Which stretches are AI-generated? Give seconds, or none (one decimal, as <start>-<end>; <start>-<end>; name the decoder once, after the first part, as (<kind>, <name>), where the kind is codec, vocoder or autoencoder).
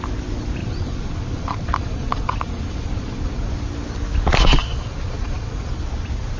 0.6-3.5 (vocoder, Vocos); 4.6-5.8